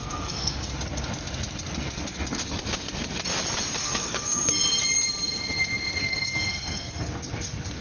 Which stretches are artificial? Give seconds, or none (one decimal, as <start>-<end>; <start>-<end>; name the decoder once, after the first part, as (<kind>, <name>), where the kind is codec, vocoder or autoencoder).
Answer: 0.0-0.7 (codec, SNAC); 3.8-4.5; 6.0-6.9